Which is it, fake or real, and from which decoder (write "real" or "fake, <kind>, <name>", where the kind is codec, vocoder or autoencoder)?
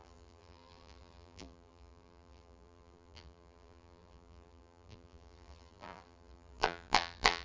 fake, vocoder, BigVGAN v2